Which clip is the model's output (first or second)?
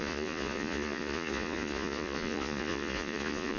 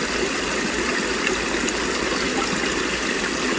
first